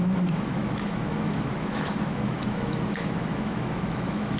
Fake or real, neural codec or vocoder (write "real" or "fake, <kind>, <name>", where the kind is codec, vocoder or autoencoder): fake, autoencoder, DAC-VAE